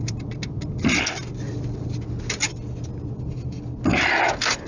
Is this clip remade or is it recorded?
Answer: recorded